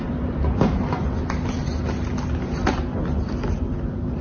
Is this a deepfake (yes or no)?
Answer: no